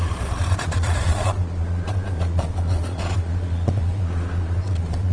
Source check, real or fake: fake